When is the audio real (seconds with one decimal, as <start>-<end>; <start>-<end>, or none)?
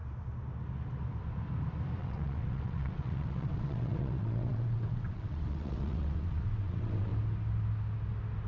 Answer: 0.0-2.0; 7.1-8.5